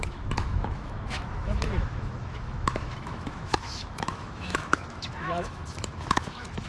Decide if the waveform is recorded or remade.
remade